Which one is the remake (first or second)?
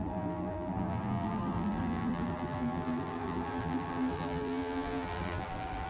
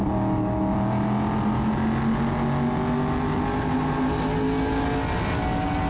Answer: first